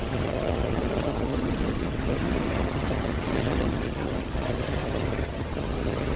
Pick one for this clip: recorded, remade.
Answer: remade